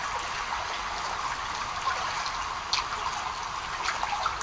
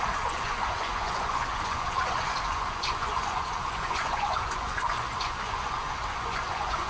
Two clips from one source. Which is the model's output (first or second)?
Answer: second